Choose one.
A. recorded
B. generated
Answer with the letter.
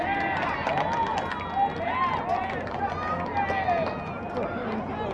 A